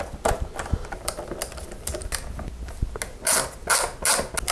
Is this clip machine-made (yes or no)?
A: no